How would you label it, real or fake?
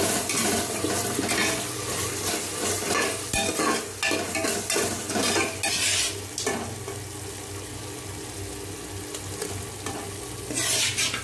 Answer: real